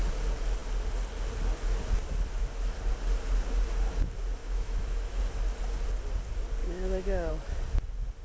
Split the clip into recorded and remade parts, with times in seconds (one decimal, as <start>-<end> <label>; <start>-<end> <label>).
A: 0.0-4.4 recorded; 4.4-5.2 remade; 5.2-6.6 recorded; 6.6-7.3 remade; 7.3-8.2 recorded